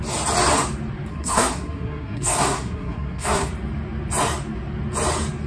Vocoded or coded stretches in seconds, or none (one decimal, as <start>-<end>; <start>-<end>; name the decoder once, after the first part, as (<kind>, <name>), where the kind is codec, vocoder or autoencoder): 1.1-3.5 (codec, SNAC)